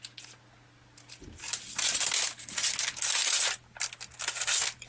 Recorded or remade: recorded